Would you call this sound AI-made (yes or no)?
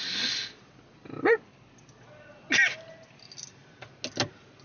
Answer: no